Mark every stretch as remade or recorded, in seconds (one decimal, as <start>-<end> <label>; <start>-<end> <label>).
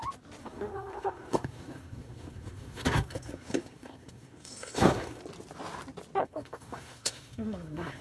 0.0-0.4 recorded; 0.4-5.2 remade; 5.2-6.2 recorded; 6.2-8.0 remade